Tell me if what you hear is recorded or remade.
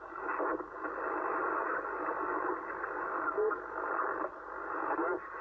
recorded